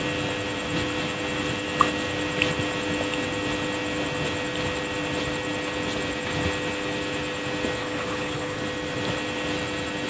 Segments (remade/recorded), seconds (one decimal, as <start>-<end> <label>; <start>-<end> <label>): 0.0-7.8 recorded; 7.8-8.6 remade; 8.6-10.1 recorded